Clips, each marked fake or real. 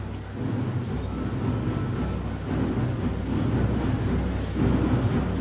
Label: real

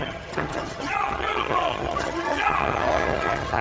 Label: fake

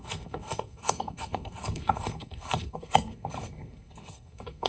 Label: fake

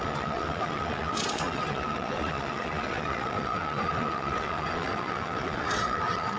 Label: fake